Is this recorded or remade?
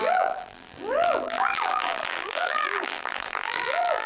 remade